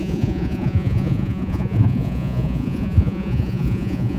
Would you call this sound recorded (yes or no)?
no